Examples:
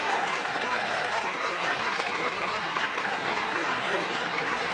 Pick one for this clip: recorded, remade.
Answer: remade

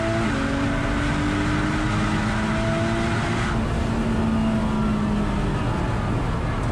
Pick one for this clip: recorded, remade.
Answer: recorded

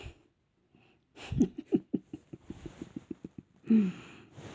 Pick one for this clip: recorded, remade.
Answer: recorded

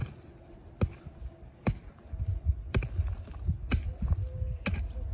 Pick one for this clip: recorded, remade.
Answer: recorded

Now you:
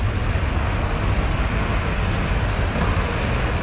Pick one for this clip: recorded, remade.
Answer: recorded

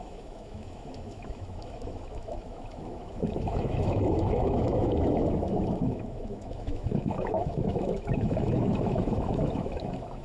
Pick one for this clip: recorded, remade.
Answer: remade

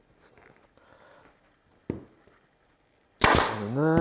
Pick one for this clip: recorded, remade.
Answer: recorded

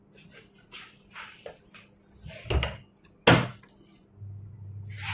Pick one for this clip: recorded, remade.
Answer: recorded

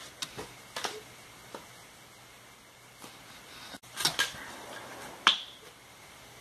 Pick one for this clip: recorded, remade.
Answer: recorded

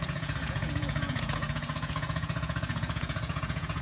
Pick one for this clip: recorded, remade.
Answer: remade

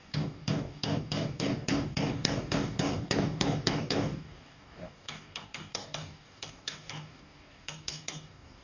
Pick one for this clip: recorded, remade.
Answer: remade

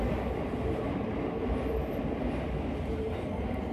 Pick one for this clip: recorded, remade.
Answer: recorded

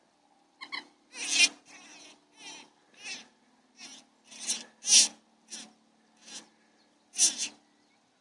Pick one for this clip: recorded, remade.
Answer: recorded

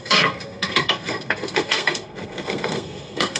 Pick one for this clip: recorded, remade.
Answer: remade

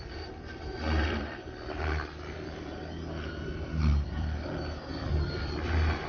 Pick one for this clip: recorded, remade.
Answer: remade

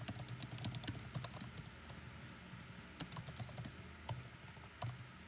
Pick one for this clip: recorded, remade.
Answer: recorded